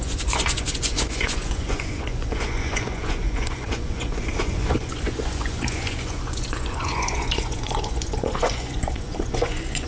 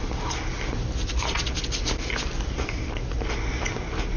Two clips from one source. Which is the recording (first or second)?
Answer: second